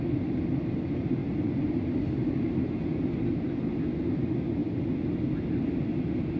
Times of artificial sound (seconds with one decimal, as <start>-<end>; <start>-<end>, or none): none